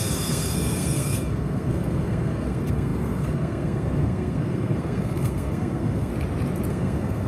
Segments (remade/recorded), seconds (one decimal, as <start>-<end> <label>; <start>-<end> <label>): 0.0-6.1 remade; 6.1-6.7 recorded; 6.7-7.3 remade